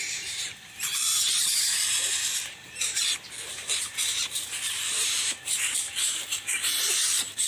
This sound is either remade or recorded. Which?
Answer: remade